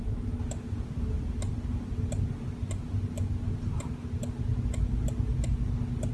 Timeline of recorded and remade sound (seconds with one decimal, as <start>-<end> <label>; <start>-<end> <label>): 0.0-6.1 recorded